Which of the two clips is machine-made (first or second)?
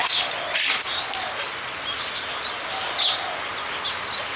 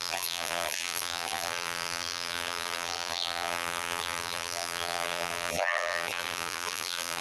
second